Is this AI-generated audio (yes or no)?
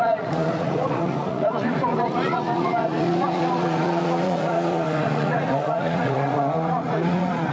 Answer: yes